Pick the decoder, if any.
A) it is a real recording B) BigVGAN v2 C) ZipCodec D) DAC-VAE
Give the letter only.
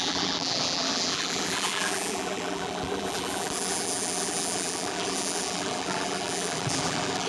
B